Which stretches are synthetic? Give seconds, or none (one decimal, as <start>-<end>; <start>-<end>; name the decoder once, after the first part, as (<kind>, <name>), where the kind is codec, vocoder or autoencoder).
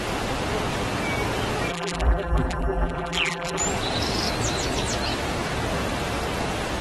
1.7-3.6 (vocoder, BigVGAN v2)